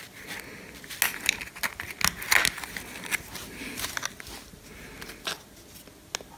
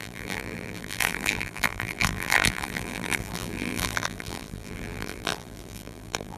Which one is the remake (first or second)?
second